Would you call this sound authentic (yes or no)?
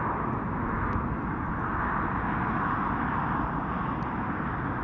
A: yes